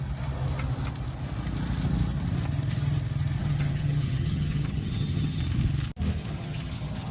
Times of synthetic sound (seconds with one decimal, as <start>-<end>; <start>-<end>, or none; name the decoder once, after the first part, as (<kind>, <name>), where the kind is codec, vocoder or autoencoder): 3.4-5.4 (vocoder, HiFi-GAN); 6.2-7.1